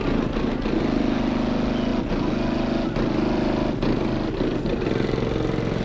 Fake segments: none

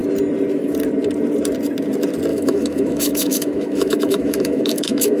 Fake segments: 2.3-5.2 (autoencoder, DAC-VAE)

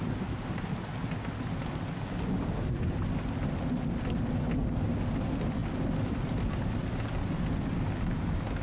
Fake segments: none

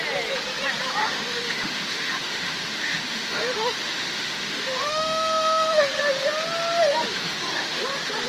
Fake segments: 1.0-6.0 (autoencoder, DAC-VAE); 6.8-7.8

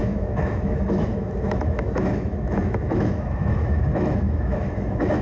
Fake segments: 0.0-5.2 (autoencoder, DAC-VAE)